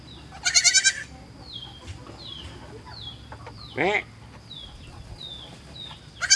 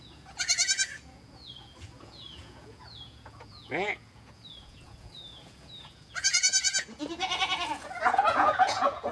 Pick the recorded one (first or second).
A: first